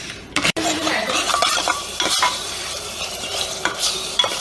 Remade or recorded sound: remade